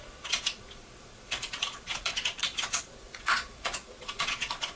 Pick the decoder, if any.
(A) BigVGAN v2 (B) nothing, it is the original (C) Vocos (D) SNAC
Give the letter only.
C